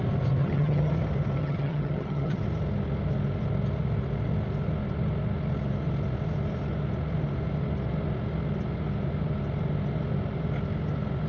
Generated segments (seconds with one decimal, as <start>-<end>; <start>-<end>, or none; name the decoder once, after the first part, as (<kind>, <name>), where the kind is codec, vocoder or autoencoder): 0.4-0.9 (vocoder, HiFi-GAN); 1.4-2.4